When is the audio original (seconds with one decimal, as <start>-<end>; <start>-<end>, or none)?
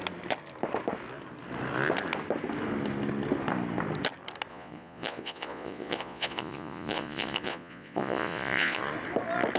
0.0-4.5; 8.8-9.6